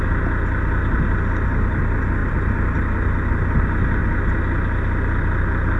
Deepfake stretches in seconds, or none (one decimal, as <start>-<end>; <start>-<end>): none